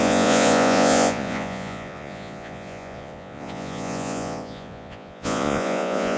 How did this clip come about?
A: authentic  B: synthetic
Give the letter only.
B